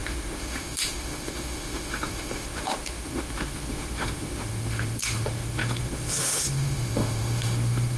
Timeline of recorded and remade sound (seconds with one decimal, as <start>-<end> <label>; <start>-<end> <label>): 0.0-8.0 remade